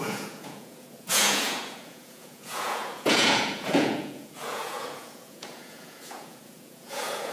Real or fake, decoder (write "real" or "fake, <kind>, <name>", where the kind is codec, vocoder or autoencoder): fake, vocoder, Vocos